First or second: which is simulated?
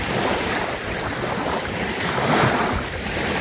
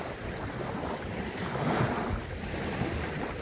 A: first